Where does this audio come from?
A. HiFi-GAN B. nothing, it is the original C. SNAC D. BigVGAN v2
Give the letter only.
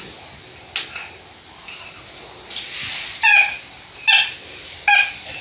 B